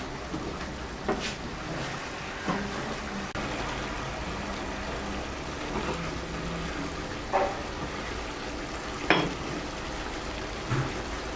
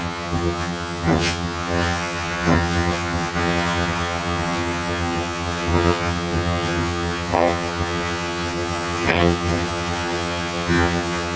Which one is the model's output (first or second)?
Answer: second